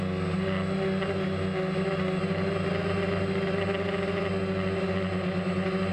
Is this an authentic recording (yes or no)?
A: yes